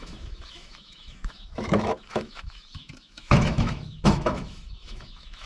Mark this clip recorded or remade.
remade